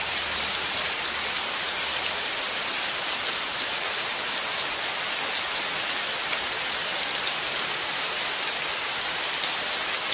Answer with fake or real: real